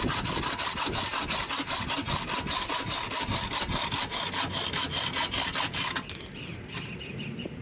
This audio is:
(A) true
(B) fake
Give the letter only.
A